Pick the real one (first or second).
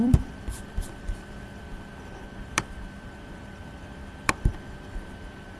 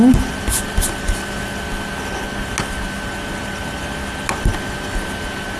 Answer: second